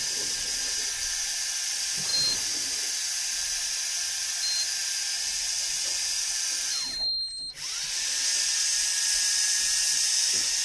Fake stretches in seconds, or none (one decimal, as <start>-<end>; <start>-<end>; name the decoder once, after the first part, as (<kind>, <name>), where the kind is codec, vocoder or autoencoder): none